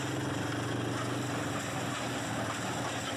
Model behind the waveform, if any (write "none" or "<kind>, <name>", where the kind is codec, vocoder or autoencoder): none